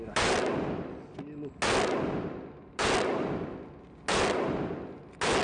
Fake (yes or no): no